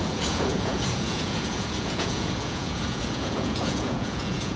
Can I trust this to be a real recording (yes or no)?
no